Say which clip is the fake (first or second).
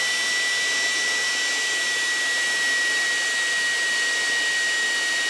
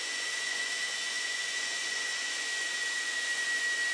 second